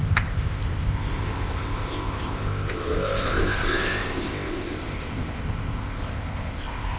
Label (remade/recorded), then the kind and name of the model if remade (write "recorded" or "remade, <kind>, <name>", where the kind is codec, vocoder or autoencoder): remade, codec, ZipCodec